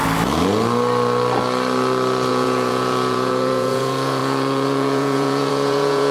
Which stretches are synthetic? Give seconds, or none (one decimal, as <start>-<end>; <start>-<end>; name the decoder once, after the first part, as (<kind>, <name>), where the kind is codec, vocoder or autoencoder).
2.3-6.1 (vocoder, Vocos)